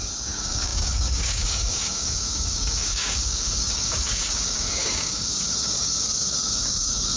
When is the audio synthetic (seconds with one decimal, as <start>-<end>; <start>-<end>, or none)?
0.0-7.2

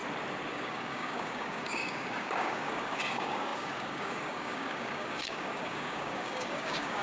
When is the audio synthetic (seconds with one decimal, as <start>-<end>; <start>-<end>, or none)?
0.5-7.0

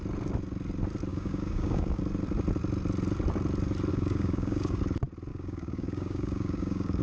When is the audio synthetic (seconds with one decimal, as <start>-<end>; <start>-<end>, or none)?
1.1-2.0; 3.9-4.8; 5.3-7.0

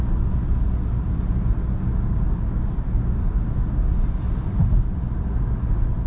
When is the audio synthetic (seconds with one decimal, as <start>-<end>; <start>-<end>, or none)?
1.6-4.2

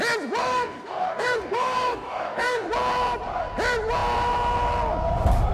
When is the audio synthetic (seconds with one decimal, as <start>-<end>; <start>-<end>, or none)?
0.4-2.7